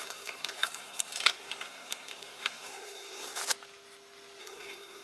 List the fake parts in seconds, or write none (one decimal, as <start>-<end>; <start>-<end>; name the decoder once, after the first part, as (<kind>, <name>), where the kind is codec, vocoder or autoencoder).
0.0-3.4 (codec, SNAC); 4.4-5.0